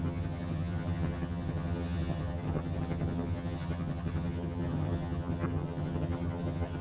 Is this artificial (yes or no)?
yes